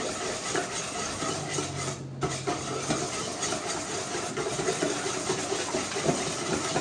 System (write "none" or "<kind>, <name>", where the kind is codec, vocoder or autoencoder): none